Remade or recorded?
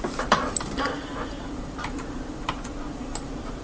remade